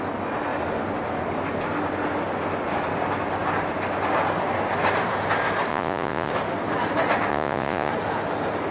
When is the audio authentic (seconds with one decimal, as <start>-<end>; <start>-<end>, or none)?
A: 0.0-5.7; 6.3-7.3; 7.9-8.7